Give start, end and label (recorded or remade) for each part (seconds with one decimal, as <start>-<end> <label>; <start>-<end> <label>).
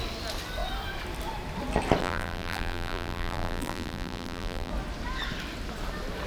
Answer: 0.0-2.0 recorded; 2.0-4.7 remade; 4.7-6.3 recorded